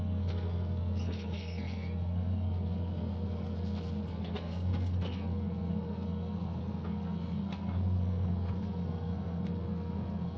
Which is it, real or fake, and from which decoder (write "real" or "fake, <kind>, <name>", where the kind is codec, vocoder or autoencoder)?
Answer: fake, codec, SNAC